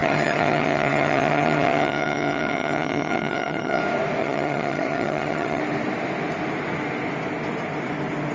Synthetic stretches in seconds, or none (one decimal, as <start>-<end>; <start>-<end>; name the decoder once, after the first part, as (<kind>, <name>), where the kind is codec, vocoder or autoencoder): 0.0-3.8 (vocoder, HiFi-GAN); 4.2-5.6

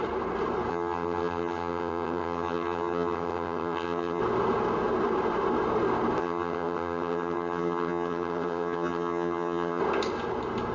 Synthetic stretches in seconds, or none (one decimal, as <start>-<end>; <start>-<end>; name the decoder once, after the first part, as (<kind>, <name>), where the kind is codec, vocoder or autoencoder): 0.7-4.2 (vocoder, HiFi-GAN); 6.2-9.8

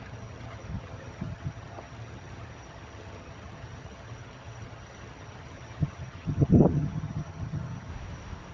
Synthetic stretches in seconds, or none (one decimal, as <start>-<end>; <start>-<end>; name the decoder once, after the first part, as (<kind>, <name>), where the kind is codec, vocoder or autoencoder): 0.0-7.9 (vocoder, HiFi-GAN)

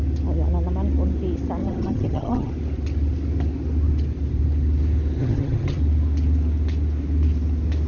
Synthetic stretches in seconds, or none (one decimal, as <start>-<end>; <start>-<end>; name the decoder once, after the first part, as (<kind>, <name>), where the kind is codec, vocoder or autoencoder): 1.6-2.5 (vocoder, HiFi-GAN); 5.2-5.8

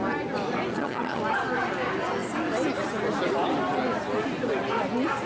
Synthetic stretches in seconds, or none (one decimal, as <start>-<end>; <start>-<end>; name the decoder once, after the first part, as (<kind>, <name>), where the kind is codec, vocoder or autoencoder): 0.7-1.2 (vocoder, HiFi-GAN)

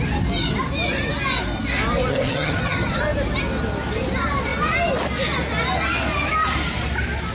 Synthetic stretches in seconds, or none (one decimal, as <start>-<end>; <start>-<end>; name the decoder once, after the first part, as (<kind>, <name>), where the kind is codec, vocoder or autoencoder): 2.1-3.0 (vocoder, HiFi-GAN)

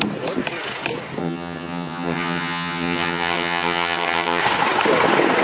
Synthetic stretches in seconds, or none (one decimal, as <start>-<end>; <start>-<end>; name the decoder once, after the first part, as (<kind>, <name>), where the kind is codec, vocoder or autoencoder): 1.2-4.4 (vocoder, HiFi-GAN)